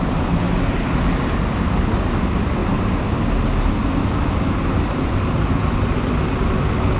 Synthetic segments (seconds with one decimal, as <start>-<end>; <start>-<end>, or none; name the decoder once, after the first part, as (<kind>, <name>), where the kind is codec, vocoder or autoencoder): none